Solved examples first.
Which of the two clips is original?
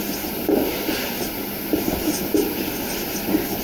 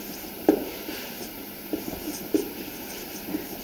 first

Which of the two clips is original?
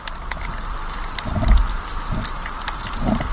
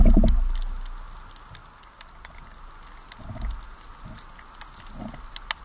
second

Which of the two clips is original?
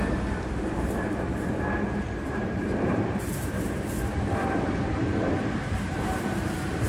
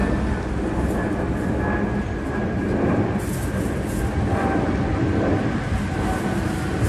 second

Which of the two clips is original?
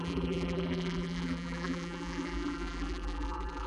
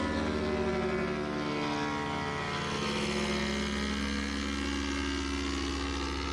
second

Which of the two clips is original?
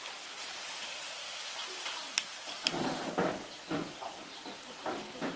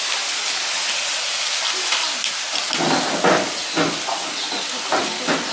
second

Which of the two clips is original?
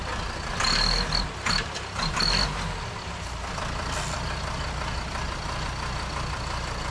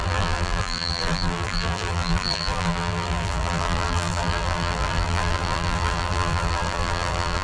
first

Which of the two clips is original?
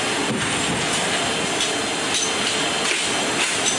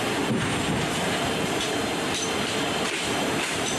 first